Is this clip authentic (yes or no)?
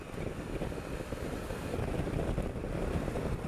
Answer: yes